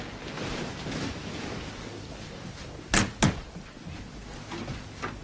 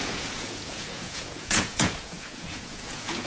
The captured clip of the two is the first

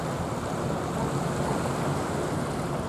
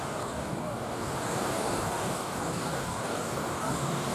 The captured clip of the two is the first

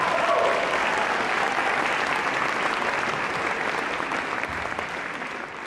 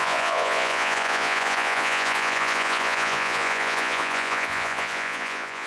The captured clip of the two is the first